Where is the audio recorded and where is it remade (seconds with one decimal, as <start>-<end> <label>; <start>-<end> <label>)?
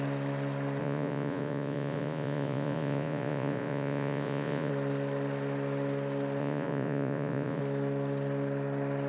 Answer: 0.0-0.8 recorded; 0.8-4.7 remade; 4.7-6.4 recorded; 6.4-7.6 remade; 7.6-9.1 recorded